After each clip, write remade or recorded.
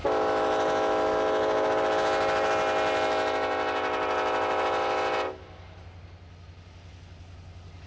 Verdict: recorded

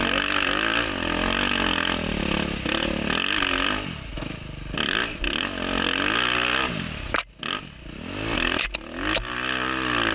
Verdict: recorded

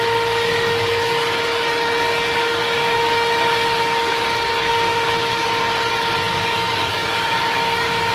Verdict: remade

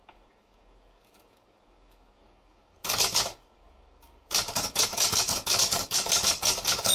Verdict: remade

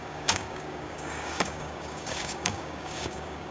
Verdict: remade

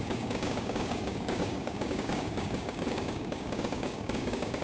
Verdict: remade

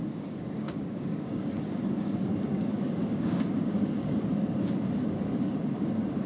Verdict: remade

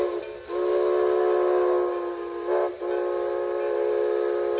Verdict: recorded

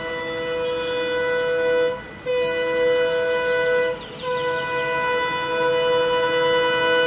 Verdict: recorded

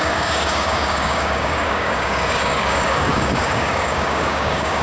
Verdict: remade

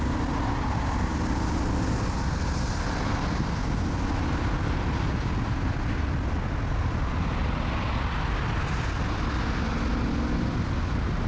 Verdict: recorded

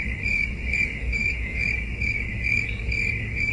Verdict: remade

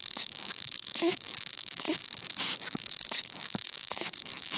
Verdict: remade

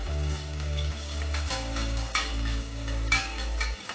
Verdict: remade